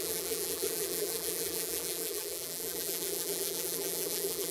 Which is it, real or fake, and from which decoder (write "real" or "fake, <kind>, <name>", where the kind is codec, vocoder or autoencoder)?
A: fake, vocoder, BigVGAN v2